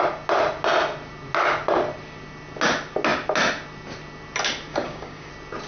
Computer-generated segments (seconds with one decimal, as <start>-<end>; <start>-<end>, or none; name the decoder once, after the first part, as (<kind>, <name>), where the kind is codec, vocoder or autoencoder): 4.7-5.3 (codec, DAC)